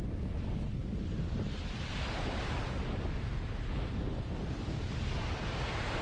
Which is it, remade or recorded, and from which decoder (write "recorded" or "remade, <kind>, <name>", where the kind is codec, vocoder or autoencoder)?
recorded